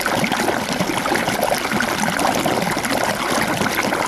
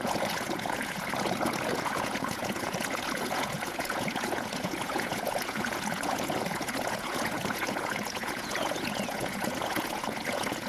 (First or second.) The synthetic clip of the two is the second